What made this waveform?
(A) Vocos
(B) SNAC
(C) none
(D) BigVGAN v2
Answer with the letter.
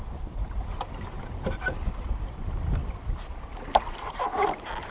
C